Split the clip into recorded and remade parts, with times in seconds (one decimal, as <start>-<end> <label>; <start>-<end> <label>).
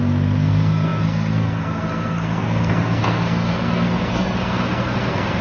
0.0-5.4 remade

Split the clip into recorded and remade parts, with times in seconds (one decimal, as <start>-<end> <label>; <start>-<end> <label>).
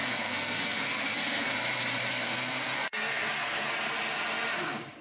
0.0-1.5 remade; 1.5-2.1 recorded; 2.1-3.7 remade; 3.7-5.0 recorded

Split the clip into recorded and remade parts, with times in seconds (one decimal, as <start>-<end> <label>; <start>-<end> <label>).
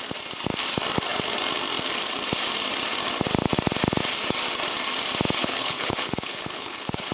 0.0-5.4 recorded; 5.4-7.1 remade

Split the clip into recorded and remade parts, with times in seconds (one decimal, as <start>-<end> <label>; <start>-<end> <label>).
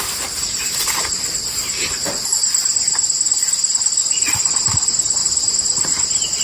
0.0-4.0 recorded; 4.0-4.6 remade; 4.6-5.2 recorded; 5.2-6.4 remade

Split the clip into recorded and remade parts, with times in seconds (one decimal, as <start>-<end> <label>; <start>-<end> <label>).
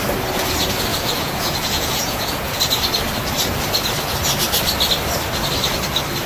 0.0-0.9 recorded; 0.9-2.6 remade; 2.6-6.3 recorded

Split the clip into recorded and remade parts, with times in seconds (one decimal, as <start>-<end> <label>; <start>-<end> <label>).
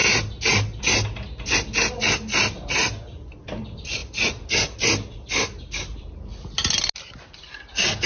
0.0-8.1 recorded